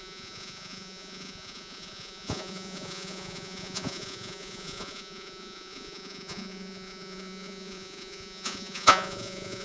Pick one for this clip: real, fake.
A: fake